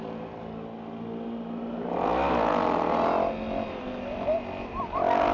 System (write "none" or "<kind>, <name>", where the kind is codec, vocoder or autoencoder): none